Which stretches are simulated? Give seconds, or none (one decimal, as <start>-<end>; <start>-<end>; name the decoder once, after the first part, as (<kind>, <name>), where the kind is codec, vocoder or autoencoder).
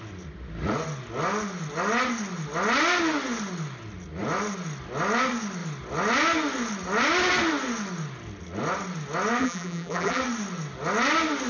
9.4-10.2 (vocoder, BigVGAN v2)